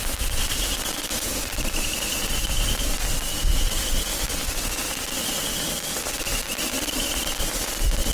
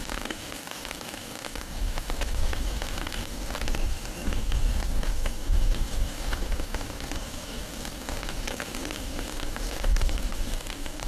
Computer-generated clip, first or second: second